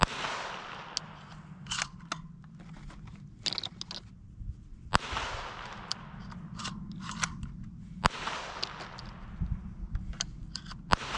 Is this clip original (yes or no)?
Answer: yes